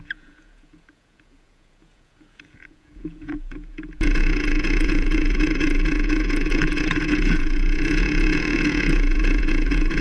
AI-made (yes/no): yes